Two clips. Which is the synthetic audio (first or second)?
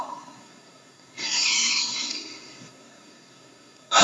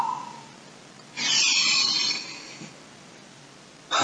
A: first